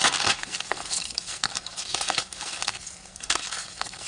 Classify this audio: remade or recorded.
remade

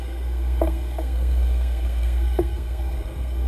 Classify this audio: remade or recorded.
remade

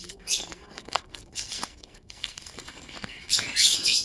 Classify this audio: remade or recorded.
remade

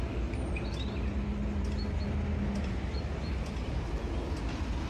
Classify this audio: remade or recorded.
recorded